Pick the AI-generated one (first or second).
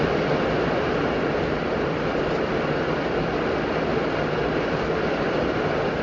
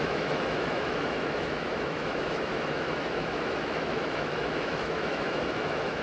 second